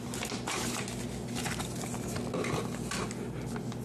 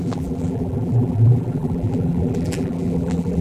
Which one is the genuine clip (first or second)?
first